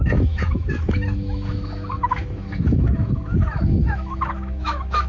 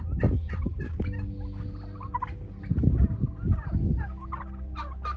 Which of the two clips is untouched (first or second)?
second